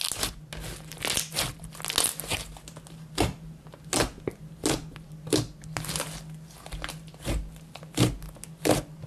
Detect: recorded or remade recorded